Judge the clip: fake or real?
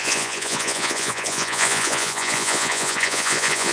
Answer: fake